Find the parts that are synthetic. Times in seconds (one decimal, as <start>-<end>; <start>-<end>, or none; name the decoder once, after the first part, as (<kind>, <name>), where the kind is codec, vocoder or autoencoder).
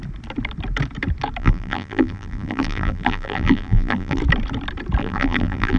1.4-4.2 (vocoder, BigVGAN v2); 5.0-5.8